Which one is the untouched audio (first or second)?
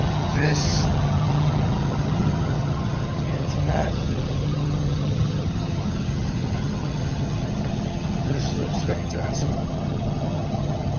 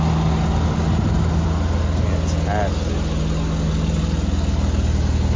second